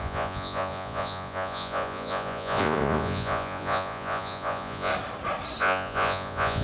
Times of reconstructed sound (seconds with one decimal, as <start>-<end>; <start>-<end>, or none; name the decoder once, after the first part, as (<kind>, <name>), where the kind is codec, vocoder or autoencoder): 0.0-4.9 (vocoder, Vocos); 5.6-6.6